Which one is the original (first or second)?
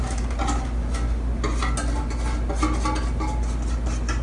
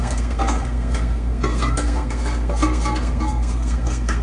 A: first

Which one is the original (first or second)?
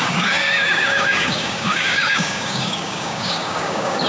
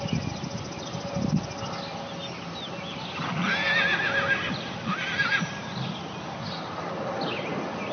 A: second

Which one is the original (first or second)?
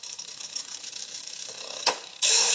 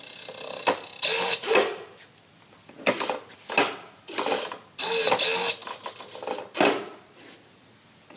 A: second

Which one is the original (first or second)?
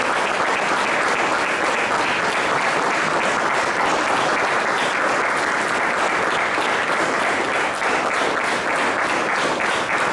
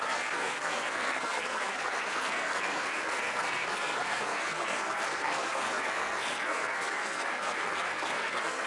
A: first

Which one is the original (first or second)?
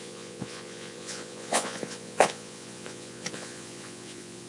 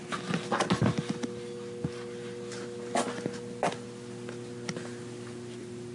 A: second